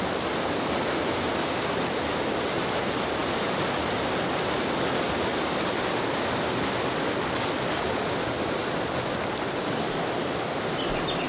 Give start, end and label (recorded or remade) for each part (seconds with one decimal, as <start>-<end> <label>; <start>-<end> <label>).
0.0-11.3 recorded